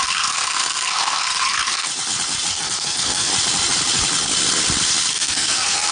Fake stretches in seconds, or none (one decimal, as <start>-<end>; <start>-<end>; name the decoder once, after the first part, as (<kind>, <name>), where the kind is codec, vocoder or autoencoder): 0.0-1.9 (codec, SNAC); 2.5-3.3; 5.1-5.9